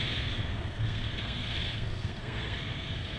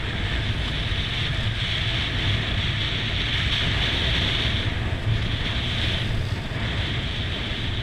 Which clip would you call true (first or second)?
second